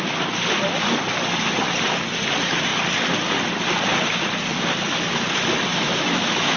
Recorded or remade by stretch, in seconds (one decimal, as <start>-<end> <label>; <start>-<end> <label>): 0.0-5.7 recorded; 5.7-6.6 remade